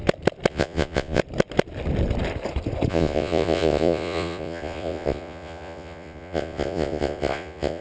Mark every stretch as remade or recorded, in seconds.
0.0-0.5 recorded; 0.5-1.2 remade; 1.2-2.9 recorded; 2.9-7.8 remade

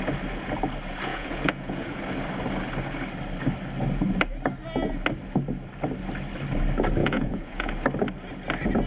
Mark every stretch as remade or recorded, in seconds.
0.0-1.1 recorded; 1.1-2.0 remade; 2.0-7.0 recorded; 7.0-7.7 remade; 7.7-8.9 recorded

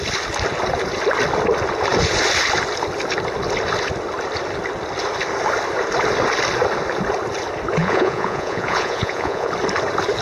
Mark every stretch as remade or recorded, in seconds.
0.0-7.8 recorded; 7.8-9.5 remade; 9.5-10.2 recorded